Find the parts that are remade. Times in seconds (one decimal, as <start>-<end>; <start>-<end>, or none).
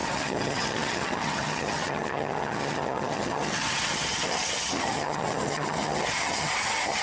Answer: 0.0-7.0